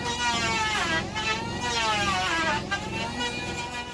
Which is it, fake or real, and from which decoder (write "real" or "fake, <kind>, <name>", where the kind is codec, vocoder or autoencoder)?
real